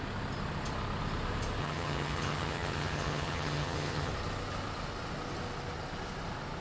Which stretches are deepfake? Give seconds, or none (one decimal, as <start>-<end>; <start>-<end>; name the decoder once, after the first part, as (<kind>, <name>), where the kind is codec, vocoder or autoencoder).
1.6-4.1 (vocoder, HiFi-GAN)